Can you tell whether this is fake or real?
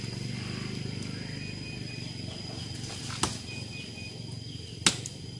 real